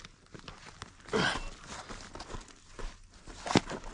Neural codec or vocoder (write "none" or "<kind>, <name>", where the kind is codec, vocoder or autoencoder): none